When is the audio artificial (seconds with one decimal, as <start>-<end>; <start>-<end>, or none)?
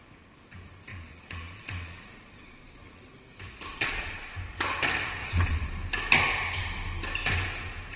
0.9-3.1; 3.7-4.3; 5.2-5.7